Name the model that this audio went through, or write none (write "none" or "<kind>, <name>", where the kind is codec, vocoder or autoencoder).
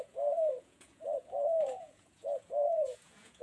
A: vocoder, Vocos